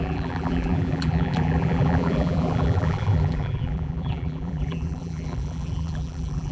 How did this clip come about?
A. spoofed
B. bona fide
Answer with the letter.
A